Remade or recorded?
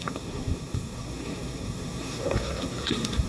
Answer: remade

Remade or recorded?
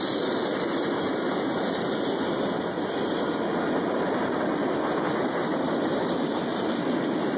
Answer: recorded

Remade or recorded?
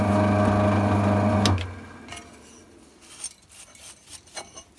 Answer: recorded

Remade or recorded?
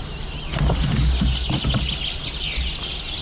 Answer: recorded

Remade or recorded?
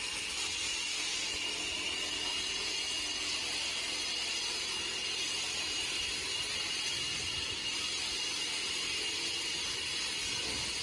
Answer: recorded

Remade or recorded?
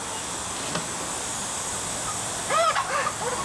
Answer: recorded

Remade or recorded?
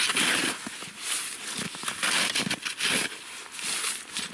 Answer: recorded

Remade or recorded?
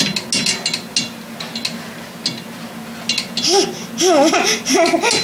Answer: recorded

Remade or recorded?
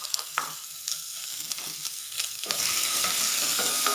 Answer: remade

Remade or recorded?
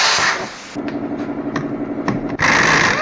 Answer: recorded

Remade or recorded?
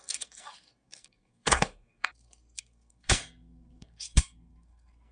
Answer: remade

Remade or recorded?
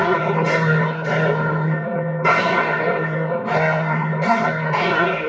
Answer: remade